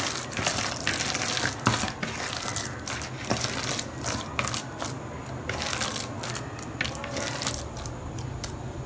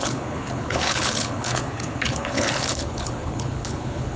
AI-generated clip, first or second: second